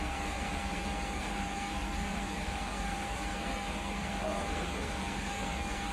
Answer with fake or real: fake